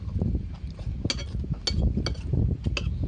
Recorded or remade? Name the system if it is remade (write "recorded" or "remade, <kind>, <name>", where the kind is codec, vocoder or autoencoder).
recorded